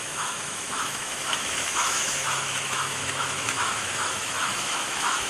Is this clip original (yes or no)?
no